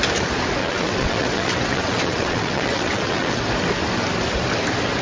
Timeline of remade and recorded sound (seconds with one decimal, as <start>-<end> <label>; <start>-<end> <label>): 0.0-0.6 recorded; 0.6-3.4 remade; 3.4-5.0 recorded